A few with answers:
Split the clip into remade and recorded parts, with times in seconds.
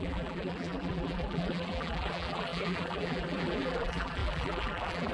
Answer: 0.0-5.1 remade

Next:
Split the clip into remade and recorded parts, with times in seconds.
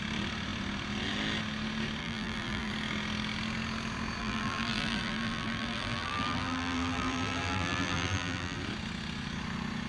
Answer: 0.0-2.0 recorded; 2.0-2.7 remade; 2.7-4.2 recorded; 4.2-8.6 remade; 8.6-9.9 recorded